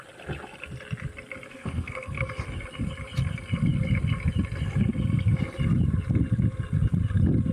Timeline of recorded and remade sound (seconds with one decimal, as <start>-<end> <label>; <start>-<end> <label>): 0.0-1.5 recorded; 1.5-2.3 remade; 2.3-7.5 recorded